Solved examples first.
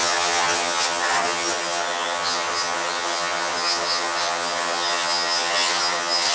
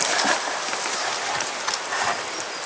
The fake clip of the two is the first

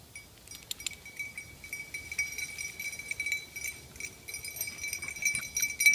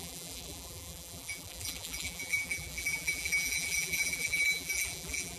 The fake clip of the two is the second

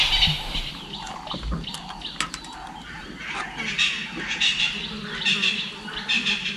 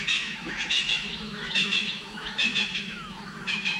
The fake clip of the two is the second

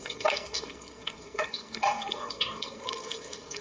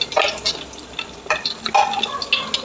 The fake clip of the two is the first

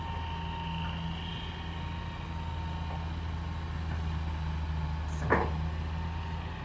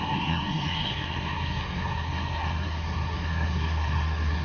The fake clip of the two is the second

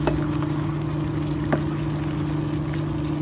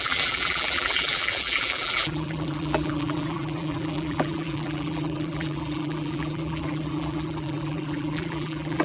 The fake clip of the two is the second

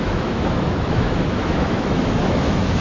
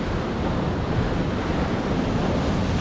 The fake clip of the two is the first